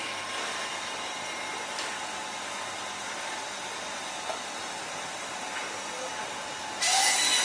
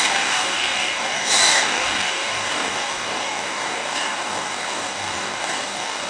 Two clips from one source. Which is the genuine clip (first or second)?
first